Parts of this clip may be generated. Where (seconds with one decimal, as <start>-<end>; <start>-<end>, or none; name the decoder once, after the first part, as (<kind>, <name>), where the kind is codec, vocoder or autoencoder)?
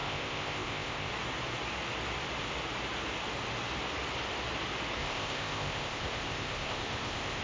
0.0-1.1 (codec, ZipCodec); 5.0-7.4